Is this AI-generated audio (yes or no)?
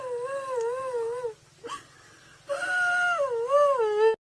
no